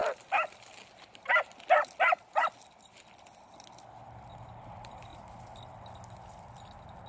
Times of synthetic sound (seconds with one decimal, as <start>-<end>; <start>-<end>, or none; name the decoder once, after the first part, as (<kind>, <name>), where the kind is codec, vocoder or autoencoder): none